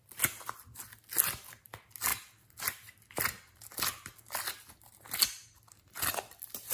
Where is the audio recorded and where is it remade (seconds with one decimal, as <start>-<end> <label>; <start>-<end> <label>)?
0.0-6.7 recorded